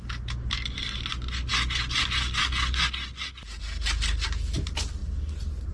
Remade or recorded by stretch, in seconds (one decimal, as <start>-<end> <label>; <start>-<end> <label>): 0.0-5.7 recorded